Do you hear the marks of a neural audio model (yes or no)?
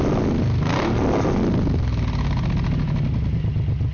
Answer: no